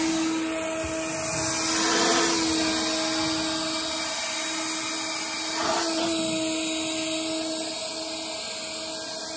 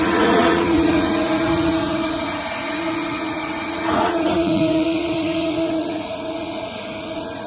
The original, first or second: first